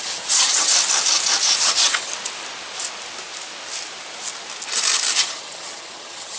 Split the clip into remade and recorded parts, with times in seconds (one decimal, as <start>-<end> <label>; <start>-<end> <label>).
0.0-0.7 remade; 0.7-1.6 recorded; 1.6-2.1 remade; 2.1-5.2 recorded; 5.2-6.4 remade